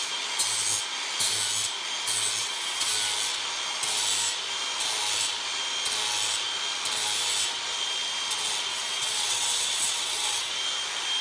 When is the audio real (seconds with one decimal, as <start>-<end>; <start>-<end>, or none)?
0.0-2.4; 2.9-8.7; 10.5-11.2